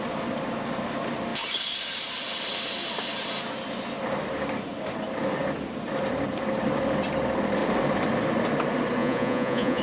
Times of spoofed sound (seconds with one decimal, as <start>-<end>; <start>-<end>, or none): 9.0-9.8